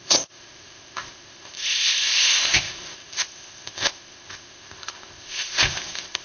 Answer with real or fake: fake